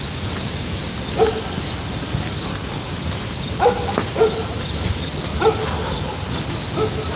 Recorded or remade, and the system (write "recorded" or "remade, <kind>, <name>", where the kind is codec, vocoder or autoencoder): recorded